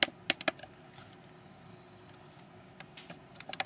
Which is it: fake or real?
real